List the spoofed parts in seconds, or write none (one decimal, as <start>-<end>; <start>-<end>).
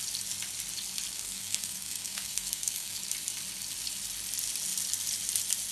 1.1-3.0